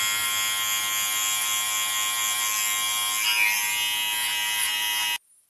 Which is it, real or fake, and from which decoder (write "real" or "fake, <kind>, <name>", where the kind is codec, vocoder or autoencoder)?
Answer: real